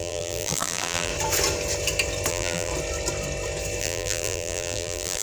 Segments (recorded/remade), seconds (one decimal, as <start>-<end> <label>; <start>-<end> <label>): 0.0-1.1 remade; 1.1-2.3 recorded; 2.3-2.7 remade; 2.7-3.8 recorded; 3.8-5.2 remade